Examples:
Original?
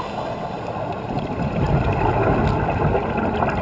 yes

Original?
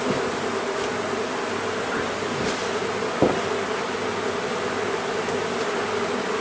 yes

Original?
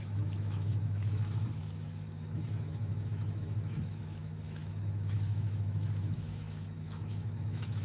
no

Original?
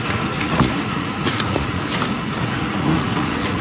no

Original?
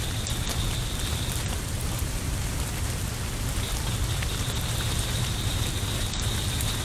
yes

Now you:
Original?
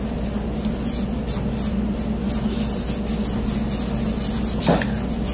yes